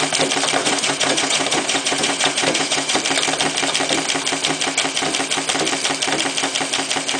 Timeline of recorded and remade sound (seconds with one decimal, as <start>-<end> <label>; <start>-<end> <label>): 0.0-0.6 recorded; 0.6-3.0 remade; 3.0-7.2 recorded